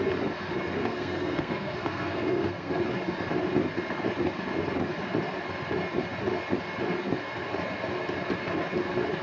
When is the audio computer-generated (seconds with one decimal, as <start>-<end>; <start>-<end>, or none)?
0.8-2.8